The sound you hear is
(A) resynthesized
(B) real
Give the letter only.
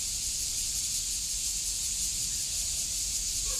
B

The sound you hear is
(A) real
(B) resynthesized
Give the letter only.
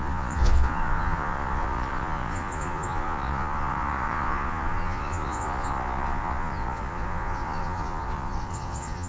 B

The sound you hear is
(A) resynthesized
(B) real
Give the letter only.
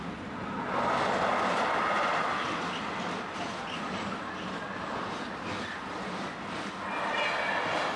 B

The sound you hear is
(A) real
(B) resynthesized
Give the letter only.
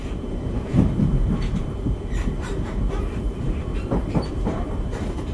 B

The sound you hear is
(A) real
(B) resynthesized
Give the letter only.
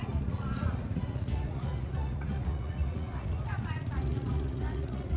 B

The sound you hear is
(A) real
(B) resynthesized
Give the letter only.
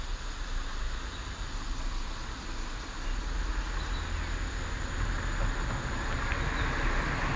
A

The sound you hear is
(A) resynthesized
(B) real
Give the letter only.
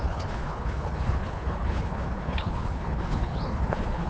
A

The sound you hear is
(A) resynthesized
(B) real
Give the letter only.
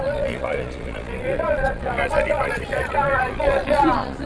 A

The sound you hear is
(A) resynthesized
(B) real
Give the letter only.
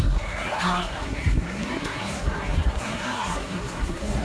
A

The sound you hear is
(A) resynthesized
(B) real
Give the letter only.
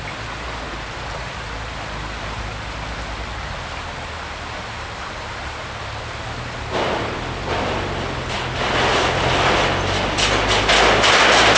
B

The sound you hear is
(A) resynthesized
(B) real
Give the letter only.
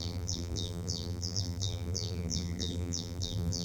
A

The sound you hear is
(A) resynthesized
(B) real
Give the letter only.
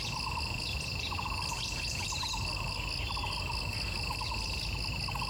B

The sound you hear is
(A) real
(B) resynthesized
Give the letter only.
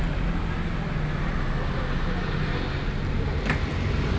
A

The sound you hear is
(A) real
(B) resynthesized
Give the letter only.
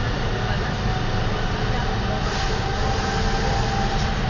A